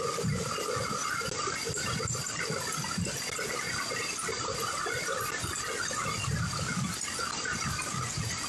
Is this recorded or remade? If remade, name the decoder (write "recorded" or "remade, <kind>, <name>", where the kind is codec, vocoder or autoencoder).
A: recorded